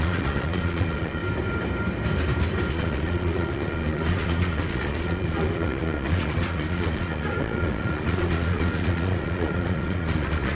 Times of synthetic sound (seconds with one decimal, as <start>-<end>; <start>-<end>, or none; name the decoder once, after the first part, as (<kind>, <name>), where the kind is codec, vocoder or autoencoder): 0.0-1.2 (vocoder, Vocos); 2.7-10.6